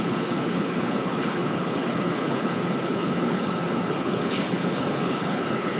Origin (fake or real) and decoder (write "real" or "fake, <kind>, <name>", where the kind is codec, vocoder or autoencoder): fake, codec, HILCodec